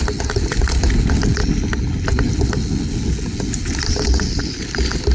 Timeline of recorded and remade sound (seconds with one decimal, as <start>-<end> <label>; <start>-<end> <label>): 0.0-5.1 recorded